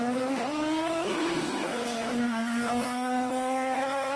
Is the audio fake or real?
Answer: fake